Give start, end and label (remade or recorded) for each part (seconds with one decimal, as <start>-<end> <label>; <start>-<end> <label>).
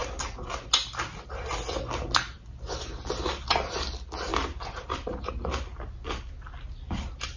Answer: 0.0-0.7 remade; 0.7-4.3 recorded; 4.3-5.3 remade; 5.3-7.4 recorded